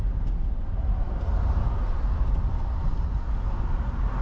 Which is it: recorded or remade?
recorded